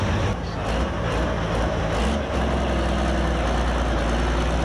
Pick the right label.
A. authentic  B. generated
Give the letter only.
A